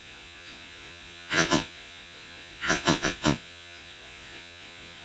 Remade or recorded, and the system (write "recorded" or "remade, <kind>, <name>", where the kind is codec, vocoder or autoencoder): remade, vocoder, Vocos